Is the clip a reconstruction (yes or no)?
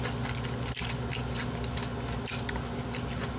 no